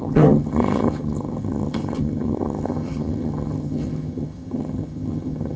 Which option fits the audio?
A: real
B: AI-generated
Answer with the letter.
B